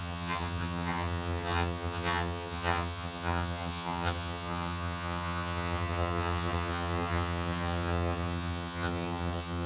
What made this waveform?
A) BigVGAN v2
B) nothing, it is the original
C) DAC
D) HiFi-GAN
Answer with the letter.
D